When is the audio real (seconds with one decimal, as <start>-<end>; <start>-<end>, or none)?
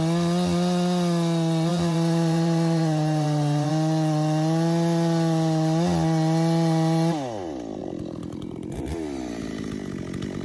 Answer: 0.0-1.7; 3.7-7.8; 8.8-10.4